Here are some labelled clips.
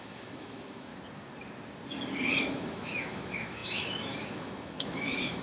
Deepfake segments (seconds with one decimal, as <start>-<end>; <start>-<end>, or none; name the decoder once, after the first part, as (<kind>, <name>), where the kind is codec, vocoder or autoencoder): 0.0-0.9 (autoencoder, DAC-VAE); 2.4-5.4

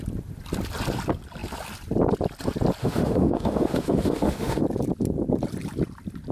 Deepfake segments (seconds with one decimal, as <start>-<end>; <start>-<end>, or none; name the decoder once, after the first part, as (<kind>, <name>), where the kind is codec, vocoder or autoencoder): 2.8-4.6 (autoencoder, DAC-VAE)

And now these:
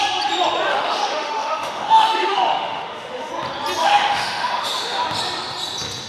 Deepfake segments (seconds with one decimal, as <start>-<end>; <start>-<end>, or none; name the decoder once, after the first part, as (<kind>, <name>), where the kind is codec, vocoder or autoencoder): 0.7-3.3 (autoencoder, DAC-VAE); 3.8-5.0

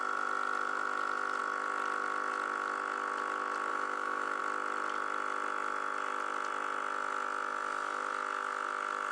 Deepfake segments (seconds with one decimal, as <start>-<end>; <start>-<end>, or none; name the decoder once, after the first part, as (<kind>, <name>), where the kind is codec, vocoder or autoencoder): 3.7-4.4 (autoencoder, DAC-VAE)